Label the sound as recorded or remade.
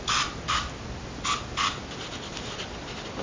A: recorded